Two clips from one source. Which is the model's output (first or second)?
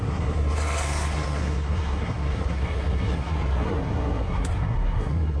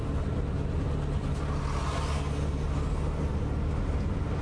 first